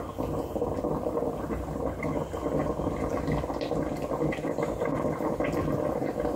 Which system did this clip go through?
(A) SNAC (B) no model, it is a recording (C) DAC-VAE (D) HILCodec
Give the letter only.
B